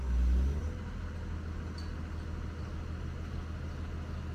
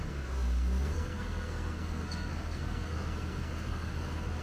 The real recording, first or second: first